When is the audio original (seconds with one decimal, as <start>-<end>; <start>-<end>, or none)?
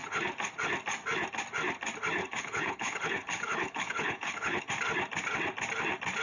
0.0-2.2; 4.7-6.2